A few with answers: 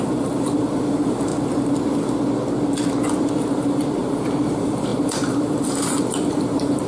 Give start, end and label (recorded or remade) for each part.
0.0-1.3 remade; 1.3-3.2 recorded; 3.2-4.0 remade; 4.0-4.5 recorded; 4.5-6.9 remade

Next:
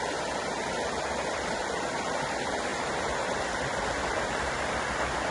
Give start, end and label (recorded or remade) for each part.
0.0-2.7 remade; 2.7-4.5 recorded; 4.5-5.3 remade

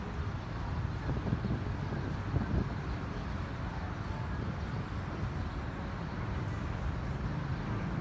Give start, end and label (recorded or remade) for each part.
0.0-8.0 recorded

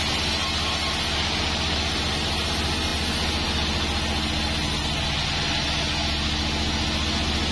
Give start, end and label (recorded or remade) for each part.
0.0-7.5 recorded

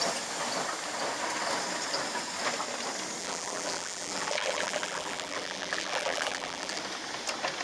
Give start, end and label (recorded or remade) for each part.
0.0-3.2 recorded; 3.2-6.8 remade; 6.8-7.6 recorded

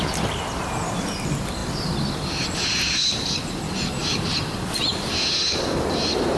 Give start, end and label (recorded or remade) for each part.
0.0-6.4 recorded